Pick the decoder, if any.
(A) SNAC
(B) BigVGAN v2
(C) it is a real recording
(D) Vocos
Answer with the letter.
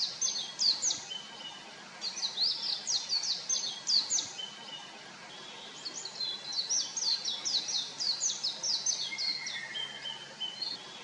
C